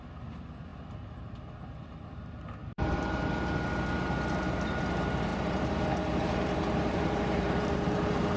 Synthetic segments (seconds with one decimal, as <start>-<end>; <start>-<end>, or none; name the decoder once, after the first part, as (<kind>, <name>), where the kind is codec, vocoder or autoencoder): 2.6-3.2 (vocoder, BigVGAN v2); 5.3-8.4

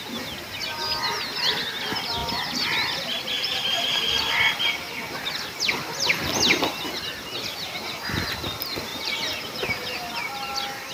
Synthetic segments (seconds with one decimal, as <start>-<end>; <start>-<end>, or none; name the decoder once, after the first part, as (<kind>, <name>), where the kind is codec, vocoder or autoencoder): 2.2-4.3 (vocoder, BigVGAN v2); 8.9-10.1

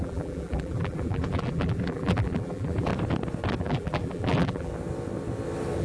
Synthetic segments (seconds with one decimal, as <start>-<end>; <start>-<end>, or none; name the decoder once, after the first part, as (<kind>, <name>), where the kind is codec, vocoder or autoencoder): 0.0-2.9 (vocoder, BigVGAN v2); 3.6-4.7

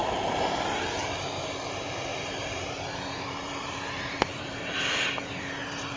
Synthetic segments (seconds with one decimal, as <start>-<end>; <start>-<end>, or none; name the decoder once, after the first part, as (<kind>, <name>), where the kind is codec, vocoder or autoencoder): 0.0-0.8 (vocoder, BigVGAN v2); 2.1-6.0